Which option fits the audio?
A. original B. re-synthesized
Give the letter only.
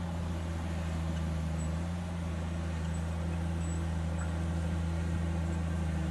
A